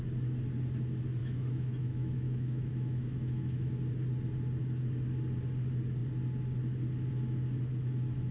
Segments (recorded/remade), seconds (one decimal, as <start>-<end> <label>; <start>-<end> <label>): 0.0-1.2 recorded; 1.2-3.7 remade; 3.7-8.3 recorded